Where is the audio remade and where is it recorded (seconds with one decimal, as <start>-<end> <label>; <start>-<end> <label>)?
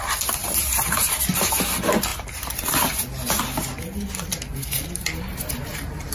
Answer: 0.0-0.4 recorded; 0.4-1.2 remade; 1.2-6.1 recorded